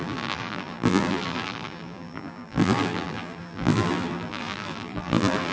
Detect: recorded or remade remade